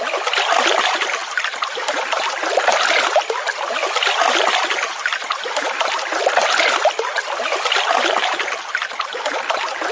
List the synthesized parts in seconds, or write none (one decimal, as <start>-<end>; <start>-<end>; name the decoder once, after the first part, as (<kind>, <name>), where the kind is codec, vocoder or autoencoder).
none